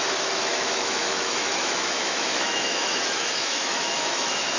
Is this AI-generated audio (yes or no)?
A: yes